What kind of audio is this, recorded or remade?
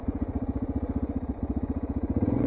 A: remade